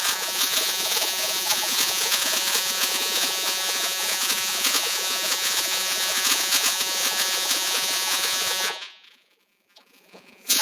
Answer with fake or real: fake